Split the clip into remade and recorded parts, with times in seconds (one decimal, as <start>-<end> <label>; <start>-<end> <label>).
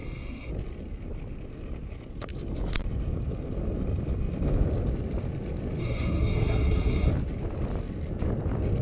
0.0-0.5 remade; 0.5-5.8 recorded; 5.8-7.1 remade; 7.1-8.8 recorded